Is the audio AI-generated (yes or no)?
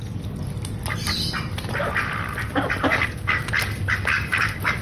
no